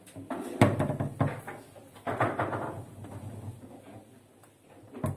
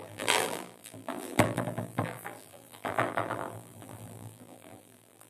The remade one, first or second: second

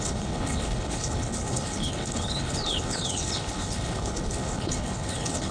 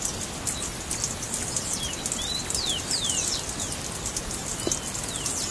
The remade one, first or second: first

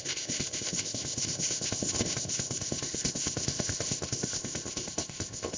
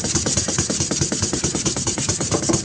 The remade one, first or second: first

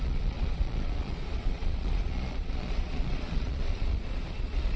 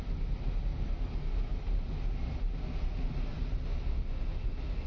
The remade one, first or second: first